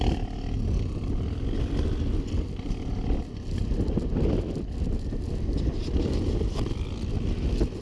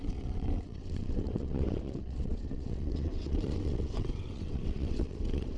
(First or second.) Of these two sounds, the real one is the first